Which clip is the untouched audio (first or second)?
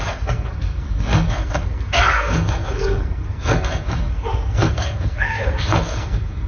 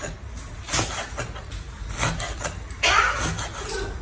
second